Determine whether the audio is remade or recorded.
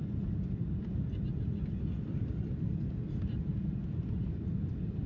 recorded